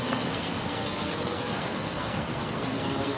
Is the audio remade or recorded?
remade